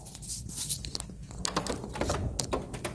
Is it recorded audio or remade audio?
recorded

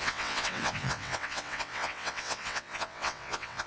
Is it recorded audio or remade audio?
remade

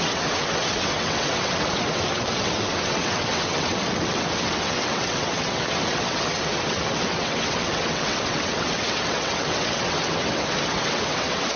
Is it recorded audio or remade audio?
remade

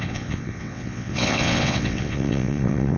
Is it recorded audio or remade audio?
remade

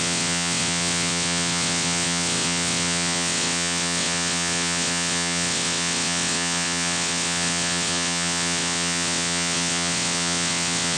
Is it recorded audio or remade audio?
remade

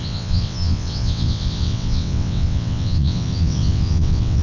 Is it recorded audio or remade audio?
remade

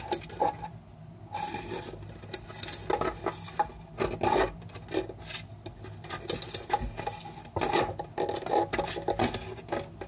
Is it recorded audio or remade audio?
recorded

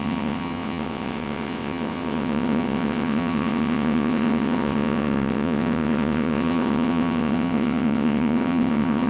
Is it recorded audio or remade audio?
remade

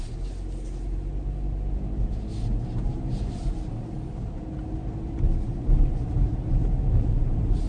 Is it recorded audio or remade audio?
recorded